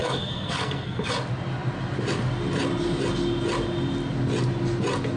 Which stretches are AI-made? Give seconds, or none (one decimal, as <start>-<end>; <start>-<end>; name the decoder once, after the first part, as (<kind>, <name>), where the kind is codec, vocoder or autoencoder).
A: 0.0-1.1 (codec, SNAC)